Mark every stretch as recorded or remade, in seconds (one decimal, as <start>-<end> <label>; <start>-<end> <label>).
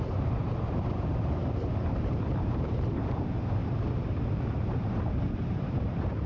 0.0-1.4 remade; 1.4-2.0 recorded; 2.0-6.3 remade